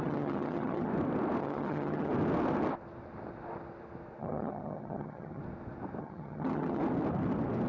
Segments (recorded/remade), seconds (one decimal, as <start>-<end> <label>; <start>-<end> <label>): 0.0-0.9 remade; 0.9-1.4 recorded; 1.4-2.1 remade; 2.1-4.2 recorded; 4.2-5.4 remade; 5.4-6.0 recorded; 6.0-6.8 remade; 6.8-7.7 recorded